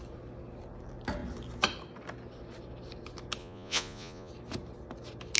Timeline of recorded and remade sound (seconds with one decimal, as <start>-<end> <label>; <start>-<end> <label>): 0.0-3.4 recorded; 3.4-4.3 remade; 4.3-5.4 recorded